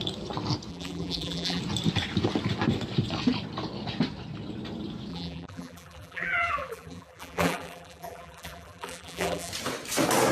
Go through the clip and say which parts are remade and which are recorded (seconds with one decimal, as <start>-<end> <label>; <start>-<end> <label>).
0.0-0.7 recorded; 0.7-1.6 remade; 1.6-5.1 recorded; 5.1-9.5 remade; 9.5-10.3 recorded